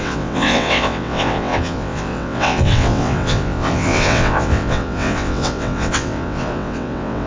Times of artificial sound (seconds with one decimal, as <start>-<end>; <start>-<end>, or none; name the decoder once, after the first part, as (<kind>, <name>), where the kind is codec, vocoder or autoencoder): 0.0-7.3 (vocoder, WaveNeXt)